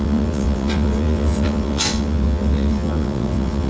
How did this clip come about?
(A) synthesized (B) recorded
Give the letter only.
A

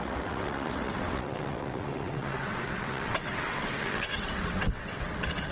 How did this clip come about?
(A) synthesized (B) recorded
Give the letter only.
A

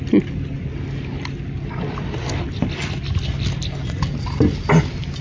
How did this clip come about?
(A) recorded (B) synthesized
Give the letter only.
A